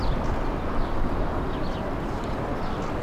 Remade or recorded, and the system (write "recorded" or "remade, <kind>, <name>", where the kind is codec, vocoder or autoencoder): recorded